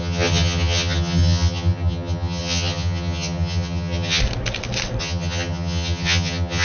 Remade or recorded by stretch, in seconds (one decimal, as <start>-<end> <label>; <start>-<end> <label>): 0.0-4.2 remade; 4.2-5.0 recorded; 5.0-6.6 remade